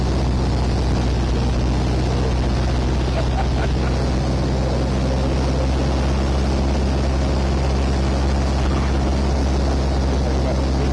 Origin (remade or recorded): recorded